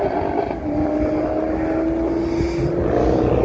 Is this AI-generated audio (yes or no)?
no